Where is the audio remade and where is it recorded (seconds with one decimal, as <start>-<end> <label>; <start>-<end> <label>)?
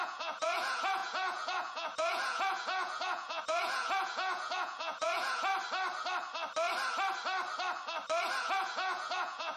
0.0-5.5 remade; 5.5-8.4 recorded; 8.4-9.6 remade